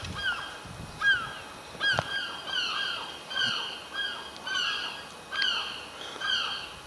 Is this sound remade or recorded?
recorded